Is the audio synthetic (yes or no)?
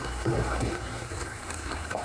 yes